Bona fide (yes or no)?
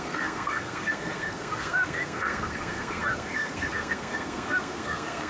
no